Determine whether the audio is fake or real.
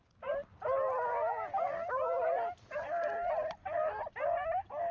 real